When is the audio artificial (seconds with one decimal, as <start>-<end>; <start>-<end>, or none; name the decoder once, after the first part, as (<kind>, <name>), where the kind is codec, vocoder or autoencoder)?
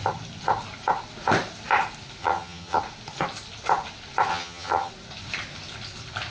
2.2-2.8 (vocoder, HiFi-GAN); 4.3-4.9